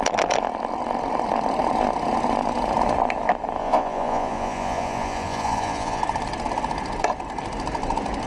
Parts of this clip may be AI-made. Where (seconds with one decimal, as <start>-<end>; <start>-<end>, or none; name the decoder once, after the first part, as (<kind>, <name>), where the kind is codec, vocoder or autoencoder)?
3.6-6.0 (vocoder, Vocos)